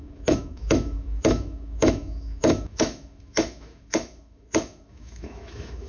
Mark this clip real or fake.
fake